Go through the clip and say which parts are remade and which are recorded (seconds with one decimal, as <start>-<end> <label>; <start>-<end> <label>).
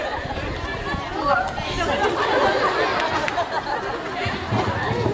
0.0-5.1 recorded